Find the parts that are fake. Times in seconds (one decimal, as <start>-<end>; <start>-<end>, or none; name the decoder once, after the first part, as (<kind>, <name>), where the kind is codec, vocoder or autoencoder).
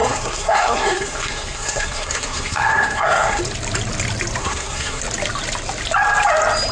0.0-3.4 (codec, SNAC); 4.4-5.0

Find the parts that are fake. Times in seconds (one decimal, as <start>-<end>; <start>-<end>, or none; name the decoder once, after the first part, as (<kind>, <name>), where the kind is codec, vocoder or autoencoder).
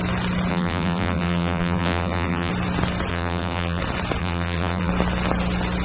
0.5-2.5 (vocoder, BigVGAN v2); 3.1-3.8; 4.2-4.9